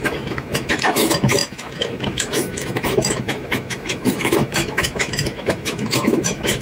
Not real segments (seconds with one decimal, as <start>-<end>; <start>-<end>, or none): 0.0-6.6